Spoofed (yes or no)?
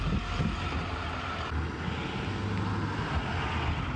no